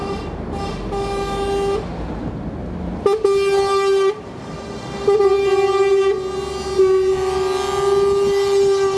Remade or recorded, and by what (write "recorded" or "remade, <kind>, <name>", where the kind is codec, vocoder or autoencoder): recorded